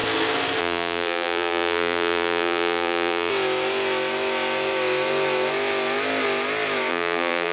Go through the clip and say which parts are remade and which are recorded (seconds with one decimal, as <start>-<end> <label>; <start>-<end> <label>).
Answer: 0.0-0.6 recorded; 0.6-3.3 remade; 3.3-6.9 recorded; 6.9-7.5 remade